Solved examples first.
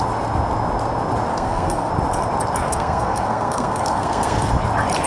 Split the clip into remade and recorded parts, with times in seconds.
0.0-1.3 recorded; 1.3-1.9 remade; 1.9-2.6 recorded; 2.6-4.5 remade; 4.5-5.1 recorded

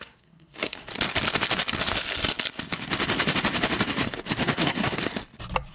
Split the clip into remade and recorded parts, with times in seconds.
0.0-0.9 remade; 0.9-4.3 recorded; 4.3-5.0 remade; 5.0-5.7 recorded